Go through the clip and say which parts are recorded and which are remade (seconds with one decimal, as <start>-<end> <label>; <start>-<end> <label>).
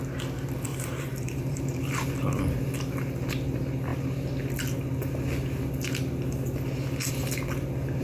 0.0-0.7 recorded; 0.7-1.6 remade; 1.6-8.0 recorded